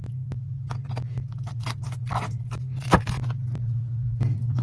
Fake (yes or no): no